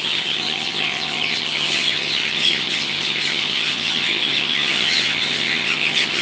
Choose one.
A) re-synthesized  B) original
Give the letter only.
A